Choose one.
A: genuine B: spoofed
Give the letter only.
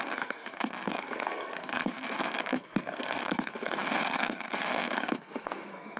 B